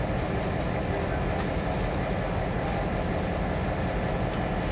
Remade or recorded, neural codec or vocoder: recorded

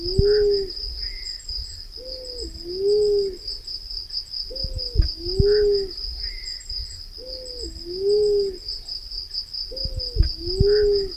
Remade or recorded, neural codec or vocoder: recorded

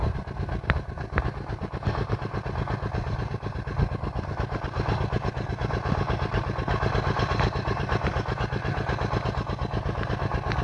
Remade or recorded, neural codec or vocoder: recorded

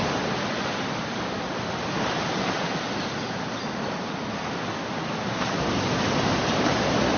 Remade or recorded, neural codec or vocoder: recorded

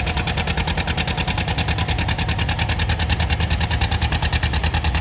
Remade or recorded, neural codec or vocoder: recorded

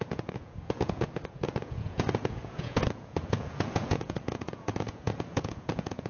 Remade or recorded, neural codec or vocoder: remade, vocoder, Vocos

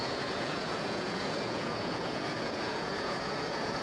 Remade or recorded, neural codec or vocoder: remade, vocoder, Vocos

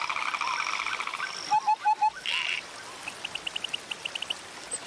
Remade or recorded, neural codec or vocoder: recorded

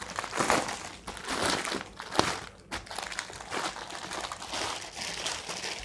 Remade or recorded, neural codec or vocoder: recorded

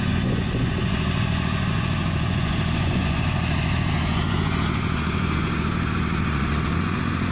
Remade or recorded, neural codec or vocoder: remade, vocoder, Vocos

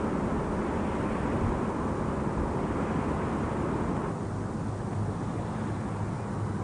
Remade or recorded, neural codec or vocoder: recorded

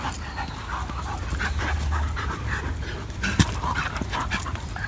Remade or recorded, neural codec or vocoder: recorded